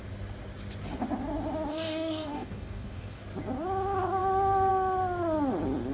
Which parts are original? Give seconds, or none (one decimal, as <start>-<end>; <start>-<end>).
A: 0.0-1.7; 3.2-5.9